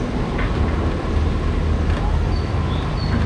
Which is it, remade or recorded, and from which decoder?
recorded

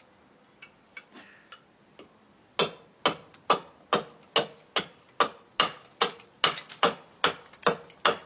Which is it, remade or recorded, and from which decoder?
recorded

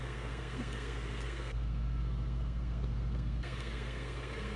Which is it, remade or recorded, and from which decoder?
remade, codec, SNAC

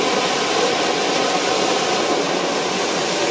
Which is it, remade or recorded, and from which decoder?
recorded